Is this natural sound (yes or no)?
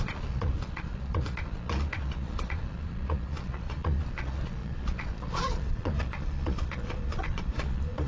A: no